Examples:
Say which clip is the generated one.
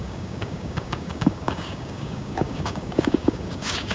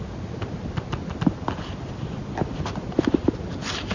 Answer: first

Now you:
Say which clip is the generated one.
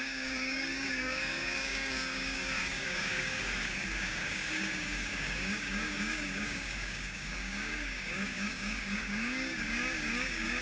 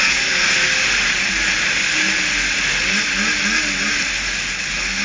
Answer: first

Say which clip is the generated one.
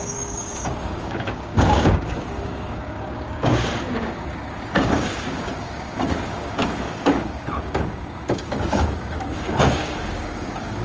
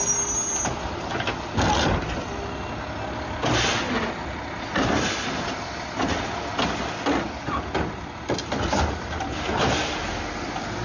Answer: first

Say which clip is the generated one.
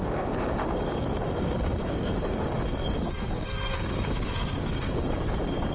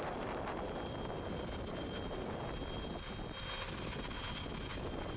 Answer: first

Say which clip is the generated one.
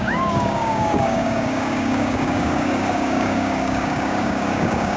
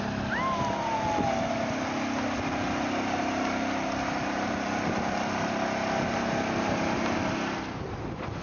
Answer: first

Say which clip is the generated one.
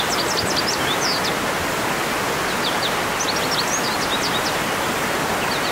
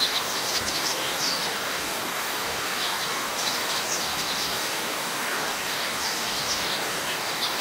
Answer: second